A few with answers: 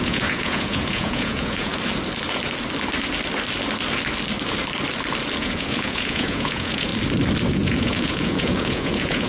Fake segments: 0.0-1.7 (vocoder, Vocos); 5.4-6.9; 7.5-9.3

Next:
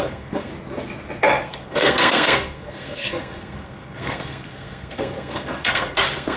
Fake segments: 0.0-0.5 (codec, SNAC); 1.2-6.4

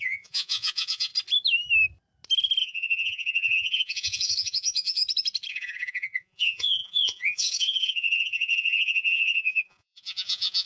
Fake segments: 0.0-1.1 (vocoder, Vocos); 2.6-5.0; 5.5-10.7

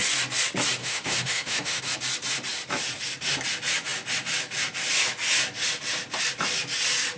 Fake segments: 0.8-1.8 (autoencoder, DAC-VAE)

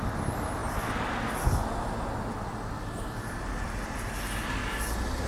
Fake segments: none

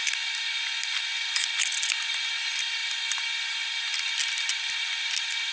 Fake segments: none

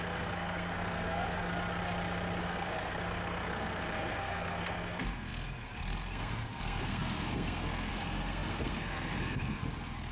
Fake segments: 0.0-1.5 (codec, SNAC); 2.4-10.1

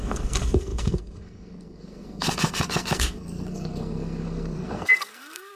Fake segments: 0.0-5.6 (codec, SNAC)